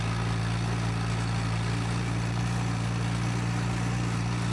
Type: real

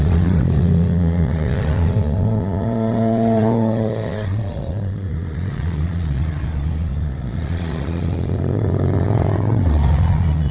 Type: fake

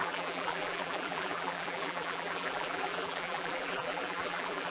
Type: fake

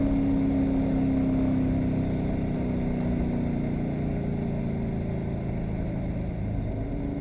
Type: real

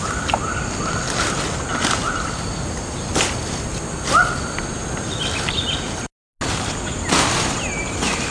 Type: real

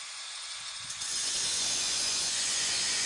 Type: fake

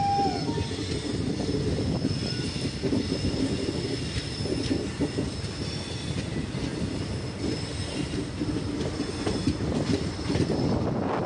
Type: real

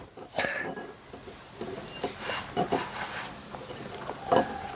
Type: real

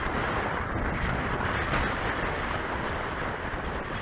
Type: real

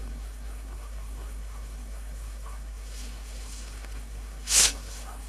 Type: fake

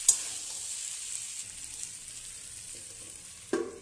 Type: real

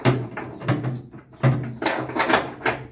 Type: real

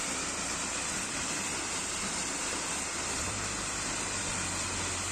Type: fake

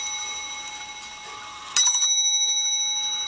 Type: real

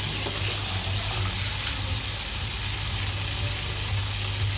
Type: real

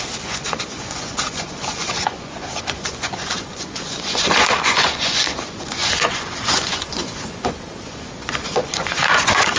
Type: fake